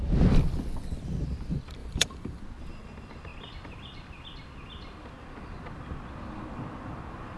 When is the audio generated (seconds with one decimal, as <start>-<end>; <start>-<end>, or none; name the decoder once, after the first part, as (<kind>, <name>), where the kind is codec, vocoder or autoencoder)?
1.8-2.4 (vocoder, BigVGAN v2)

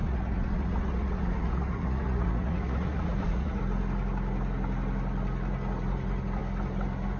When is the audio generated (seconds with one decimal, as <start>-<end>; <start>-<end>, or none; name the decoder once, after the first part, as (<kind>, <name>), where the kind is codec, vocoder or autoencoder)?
0.0-3.6 (vocoder, Vocos)

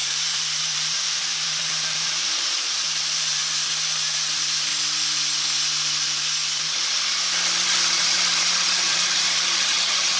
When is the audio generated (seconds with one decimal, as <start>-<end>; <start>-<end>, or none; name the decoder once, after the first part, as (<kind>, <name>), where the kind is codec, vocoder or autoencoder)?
0.0-3.4 (vocoder, BigVGAN v2); 4.3-4.7; 7.9-10.2

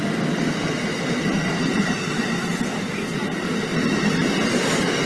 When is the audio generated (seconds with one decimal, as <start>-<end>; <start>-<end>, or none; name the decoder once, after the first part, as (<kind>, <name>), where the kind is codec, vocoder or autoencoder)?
3.7-4.3 (vocoder, BigVGAN v2)